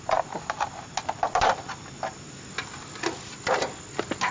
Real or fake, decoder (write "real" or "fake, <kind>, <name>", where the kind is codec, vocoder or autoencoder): real